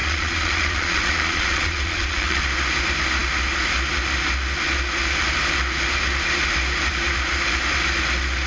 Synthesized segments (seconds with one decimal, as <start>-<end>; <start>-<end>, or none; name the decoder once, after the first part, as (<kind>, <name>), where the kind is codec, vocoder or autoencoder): 0.0-2.4 (vocoder, Vocos)

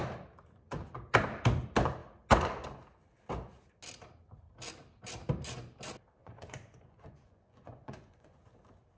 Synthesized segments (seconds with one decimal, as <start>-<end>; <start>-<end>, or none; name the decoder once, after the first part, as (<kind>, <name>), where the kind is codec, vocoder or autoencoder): 6.2-8.4 (vocoder, Vocos)

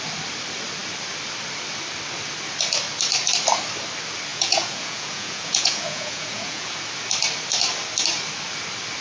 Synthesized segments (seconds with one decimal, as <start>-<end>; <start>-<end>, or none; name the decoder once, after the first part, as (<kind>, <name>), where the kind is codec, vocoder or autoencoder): 4.3-6.8 (vocoder, Vocos)

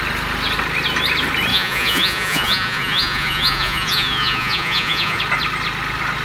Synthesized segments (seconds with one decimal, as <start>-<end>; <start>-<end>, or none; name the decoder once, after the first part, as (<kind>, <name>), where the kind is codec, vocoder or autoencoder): 1.5-5.2 (vocoder, Vocos)

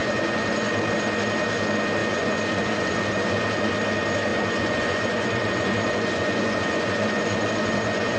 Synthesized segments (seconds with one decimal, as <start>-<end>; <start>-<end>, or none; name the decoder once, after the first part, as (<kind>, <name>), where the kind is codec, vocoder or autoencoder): 0.0-0.7 (vocoder, Vocos); 2.0-3.7; 4.3-8.2